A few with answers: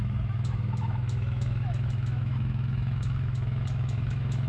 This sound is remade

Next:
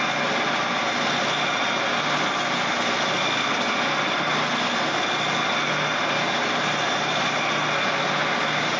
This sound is recorded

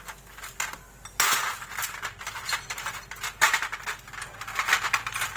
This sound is recorded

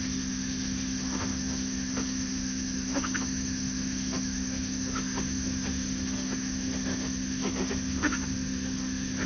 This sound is remade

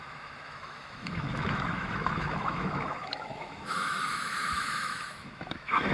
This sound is remade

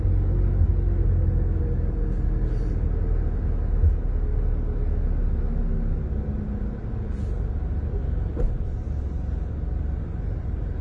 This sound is recorded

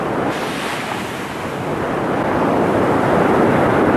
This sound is recorded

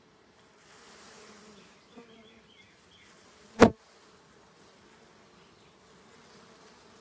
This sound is recorded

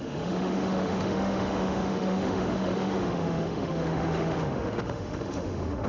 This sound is remade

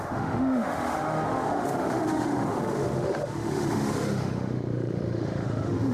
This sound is remade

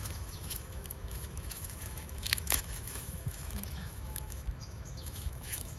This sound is remade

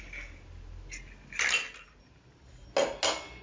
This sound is recorded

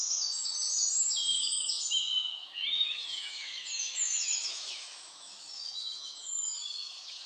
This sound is remade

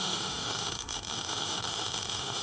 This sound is remade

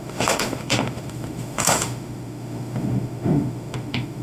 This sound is remade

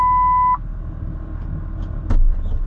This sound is recorded